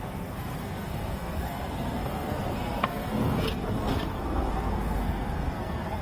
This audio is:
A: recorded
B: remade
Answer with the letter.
B